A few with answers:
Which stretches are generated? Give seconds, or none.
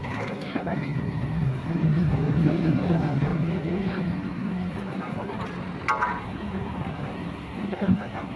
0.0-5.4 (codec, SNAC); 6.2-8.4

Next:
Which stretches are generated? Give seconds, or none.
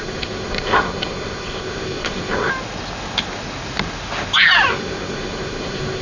0.0-2.5 (codec, SNAC); 4.7-6.0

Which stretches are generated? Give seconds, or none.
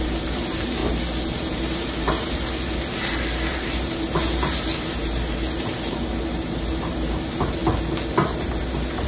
0.0-0.8 (vocoder, BigVGAN v2); 1.3-7.6; 8.6-9.1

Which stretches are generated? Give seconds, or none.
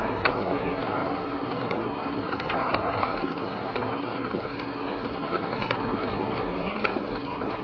0.0-7.6 (codec, SNAC)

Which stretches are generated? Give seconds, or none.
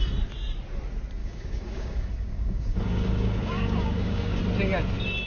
1.2-4.4 (codec, DAC)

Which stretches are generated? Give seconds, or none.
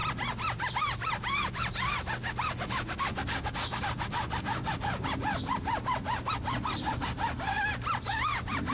none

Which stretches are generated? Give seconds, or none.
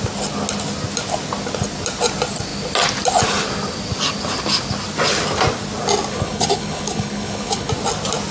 6.1-7.7 (codec, HILCodec)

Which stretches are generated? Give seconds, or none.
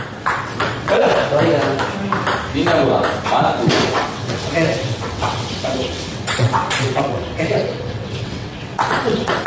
0.0-1.0 (vocoder, WaveNeXt); 3.8-9.5